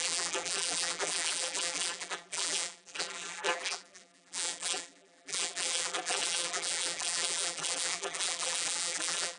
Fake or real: fake